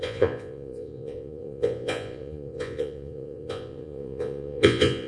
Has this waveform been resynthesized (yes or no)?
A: yes